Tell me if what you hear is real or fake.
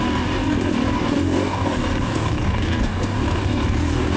fake